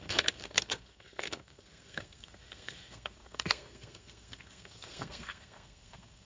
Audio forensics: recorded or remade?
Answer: remade